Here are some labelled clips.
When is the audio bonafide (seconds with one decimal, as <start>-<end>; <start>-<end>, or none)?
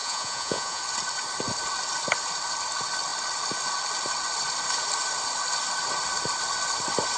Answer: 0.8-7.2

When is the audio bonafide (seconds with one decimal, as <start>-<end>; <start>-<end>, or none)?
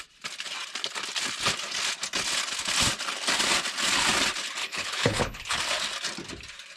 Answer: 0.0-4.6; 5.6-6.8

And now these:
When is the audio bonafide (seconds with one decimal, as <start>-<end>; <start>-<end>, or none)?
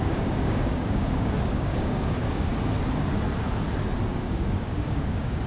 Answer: 2.5-4.1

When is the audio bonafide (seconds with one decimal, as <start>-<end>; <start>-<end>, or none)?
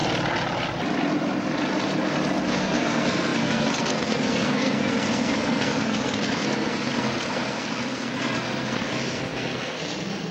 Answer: 0.0-2.5